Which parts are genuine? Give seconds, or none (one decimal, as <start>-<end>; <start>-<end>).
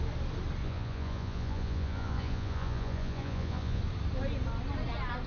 0.0-0.6; 3.8-5.3